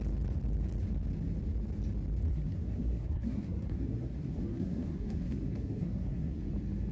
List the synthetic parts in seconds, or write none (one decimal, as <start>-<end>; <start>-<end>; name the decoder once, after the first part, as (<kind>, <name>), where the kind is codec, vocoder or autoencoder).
2.3-6.4 (codec, SNAC)